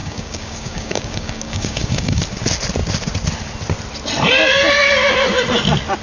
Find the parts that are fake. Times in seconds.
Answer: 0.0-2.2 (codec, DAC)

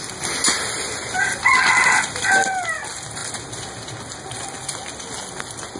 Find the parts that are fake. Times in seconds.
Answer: none

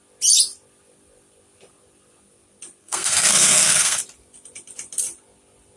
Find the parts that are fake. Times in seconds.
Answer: 2.8-4.0 (codec, SNAC)

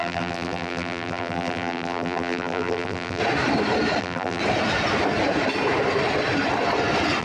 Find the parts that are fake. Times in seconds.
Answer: 0.0-3.2 (vocoder, BigVGAN v2); 4.0-4.4

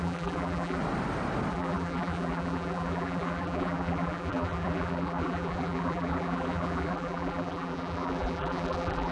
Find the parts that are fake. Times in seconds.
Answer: 0.0-0.8 (vocoder, BigVGAN v2); 1.5-9.1